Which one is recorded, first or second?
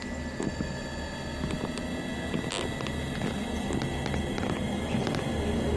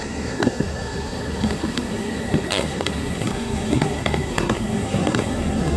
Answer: first